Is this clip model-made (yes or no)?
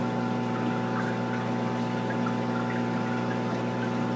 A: no